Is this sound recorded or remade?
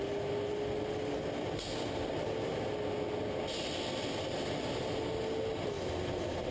recorded